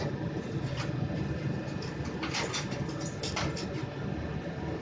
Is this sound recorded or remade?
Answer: recorded